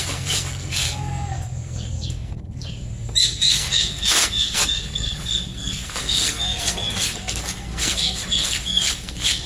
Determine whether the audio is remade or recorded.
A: remade